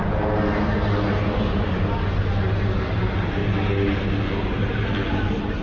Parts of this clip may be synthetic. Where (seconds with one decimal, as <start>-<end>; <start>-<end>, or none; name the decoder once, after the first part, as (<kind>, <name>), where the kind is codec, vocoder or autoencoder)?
none